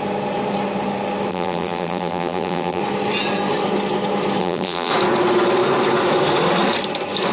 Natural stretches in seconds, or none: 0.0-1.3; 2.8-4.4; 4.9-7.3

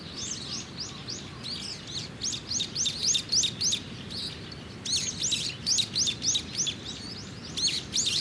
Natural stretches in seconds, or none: 0.0-8.2

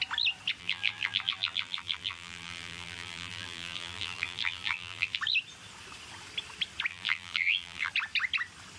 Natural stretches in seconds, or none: 0.0-0.6; 5.2-6.9; 7.9-8.8

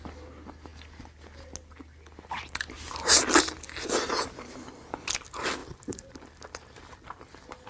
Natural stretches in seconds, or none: 0.0-5.6; 6.1-7.7